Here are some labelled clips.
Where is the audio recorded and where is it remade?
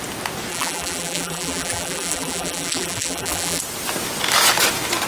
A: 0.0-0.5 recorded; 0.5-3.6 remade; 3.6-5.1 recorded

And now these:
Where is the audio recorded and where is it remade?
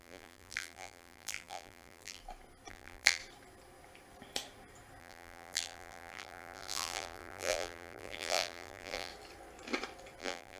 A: 0.0-2.2 remade; 2.2-2.7 recorded; 2.7-3.2 remade; 3.2-5.0 recorded; 5.0-9.1 remade; 9.1-10.2 recorded; 10.2-10.6 remade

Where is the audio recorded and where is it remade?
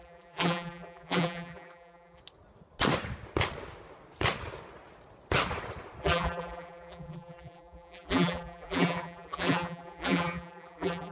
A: 0.0-2.2 remade; 2.2-6.0 recorded; 6.0-11.1 remade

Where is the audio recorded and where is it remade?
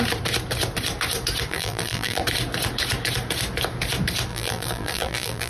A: 0.0-1.5 recorded; 1.5-2.2 remade; 2.2-4.3 recorded; 4.3-5.5 remade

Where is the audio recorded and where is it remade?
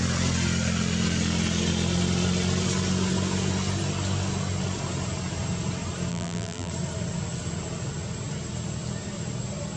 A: 0.0-6.1 recorded; 6.1-6.7 remade; 6.7-9.8 recorded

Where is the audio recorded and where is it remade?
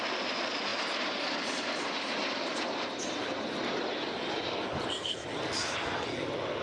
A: 0.0-6.6 recorded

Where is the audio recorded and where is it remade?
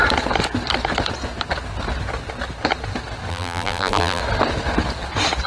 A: 0.0-3.3 recorded; 3.3-4.2 remade; 4.2-5.5 recorded